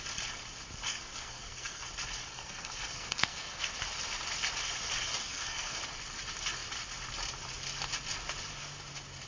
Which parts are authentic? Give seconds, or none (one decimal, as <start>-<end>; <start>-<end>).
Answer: 0.0-0.9; 1.9-2.3; 3.7-5.2; 5.8-9.3